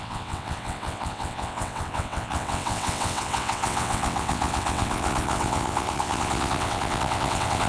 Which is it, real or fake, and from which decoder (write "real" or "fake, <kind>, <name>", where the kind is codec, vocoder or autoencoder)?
fake, vocoder, WaveNeXt